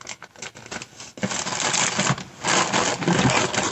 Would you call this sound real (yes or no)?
yes